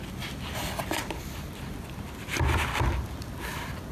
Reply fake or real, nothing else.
real